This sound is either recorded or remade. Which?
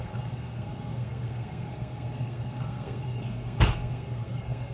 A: remade